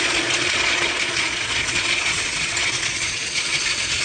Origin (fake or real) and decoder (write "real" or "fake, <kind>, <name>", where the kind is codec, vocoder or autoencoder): fake, vocoder, Vocos